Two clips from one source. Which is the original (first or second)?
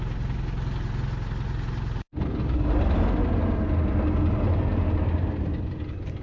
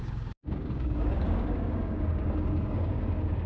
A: first